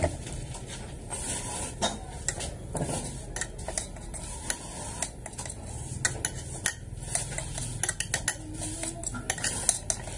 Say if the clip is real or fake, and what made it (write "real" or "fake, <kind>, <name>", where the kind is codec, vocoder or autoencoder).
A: real